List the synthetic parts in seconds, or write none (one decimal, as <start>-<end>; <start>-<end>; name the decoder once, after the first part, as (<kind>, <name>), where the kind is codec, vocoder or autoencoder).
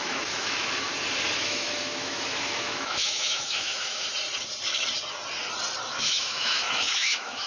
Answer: 0.0-0.9 (autoencoder, DAC-VAE); 1.4-4.1; 5.9-7.5